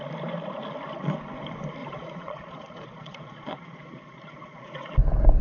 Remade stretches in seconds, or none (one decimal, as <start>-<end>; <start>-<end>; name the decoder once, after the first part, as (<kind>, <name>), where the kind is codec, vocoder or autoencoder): 1.8-5.0 (vocoder, Vocos)